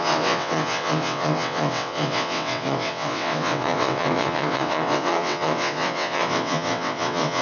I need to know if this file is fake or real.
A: fake